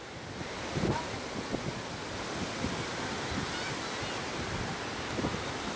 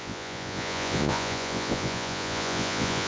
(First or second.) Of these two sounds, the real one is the first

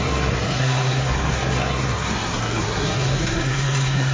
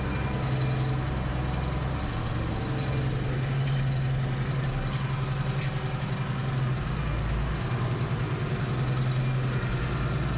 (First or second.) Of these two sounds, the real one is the second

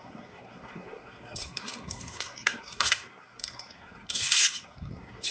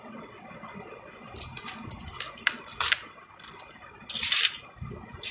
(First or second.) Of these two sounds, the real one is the second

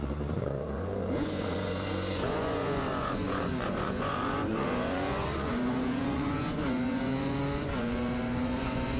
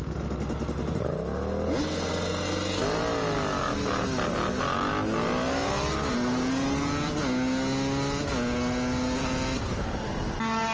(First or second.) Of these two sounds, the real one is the second